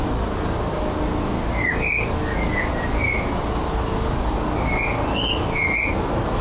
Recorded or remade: recorded